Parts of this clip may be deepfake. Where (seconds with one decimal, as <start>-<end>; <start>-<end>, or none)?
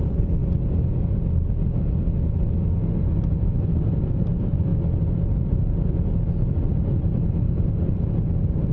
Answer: 0.0-0.4; 3.4-4.7; 7.9-8.7